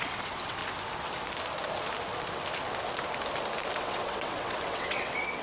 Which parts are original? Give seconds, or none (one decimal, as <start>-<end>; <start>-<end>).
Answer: 0.6-3.8